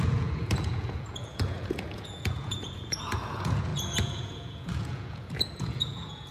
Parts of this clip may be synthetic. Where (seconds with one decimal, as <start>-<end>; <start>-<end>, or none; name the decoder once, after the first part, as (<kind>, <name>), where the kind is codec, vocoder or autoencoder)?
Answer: 0.0-6.3 (vocoder, Vocos)